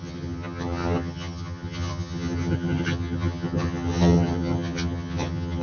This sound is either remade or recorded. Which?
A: remade